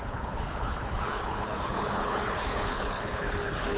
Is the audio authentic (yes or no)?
no